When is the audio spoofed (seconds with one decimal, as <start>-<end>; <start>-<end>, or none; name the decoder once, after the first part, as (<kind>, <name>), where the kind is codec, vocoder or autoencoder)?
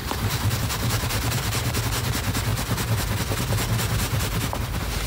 0.0-1.8 (vocoder, BigVGAN v2)